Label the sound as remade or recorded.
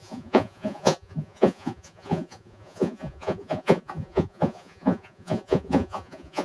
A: remade